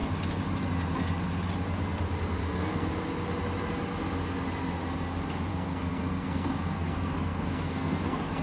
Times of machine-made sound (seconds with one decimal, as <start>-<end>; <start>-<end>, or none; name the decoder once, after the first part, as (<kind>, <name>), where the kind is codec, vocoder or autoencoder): 2.4-2.9 (codec, SNAC); 5.5-8.4